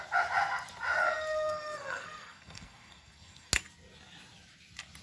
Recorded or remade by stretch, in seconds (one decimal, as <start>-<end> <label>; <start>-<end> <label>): 0.0-1.0 recorded; 1.0-3.5 remade; 3.5-5.0 recorded